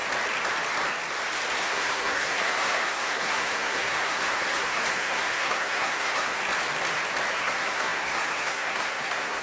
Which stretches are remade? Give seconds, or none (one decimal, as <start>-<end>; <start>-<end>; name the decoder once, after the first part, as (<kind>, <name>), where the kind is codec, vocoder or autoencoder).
1.6-6.4 (codec, SNAC); 7.3-9.4